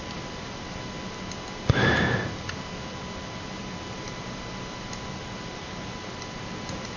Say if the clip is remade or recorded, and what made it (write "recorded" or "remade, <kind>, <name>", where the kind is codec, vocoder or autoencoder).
recorded